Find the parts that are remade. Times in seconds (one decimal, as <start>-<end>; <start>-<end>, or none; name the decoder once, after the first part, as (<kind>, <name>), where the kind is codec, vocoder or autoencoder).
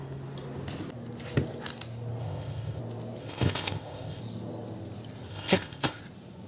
2.2-2.8 (codec, ZipCodec); 3.2-4.2; 5.3-6.0